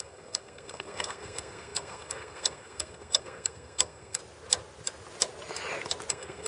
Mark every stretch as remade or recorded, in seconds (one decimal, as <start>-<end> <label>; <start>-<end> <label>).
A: 0.0-4.2 remade; 4.2-6.1 recorded; 6.1-6.5 remade